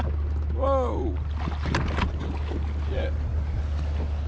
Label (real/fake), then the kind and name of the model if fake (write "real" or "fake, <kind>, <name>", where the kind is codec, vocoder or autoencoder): real